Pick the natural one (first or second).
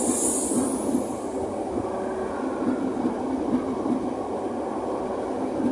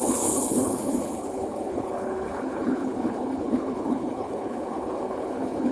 first